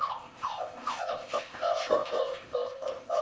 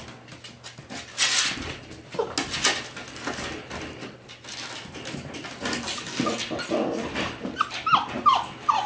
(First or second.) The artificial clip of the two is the first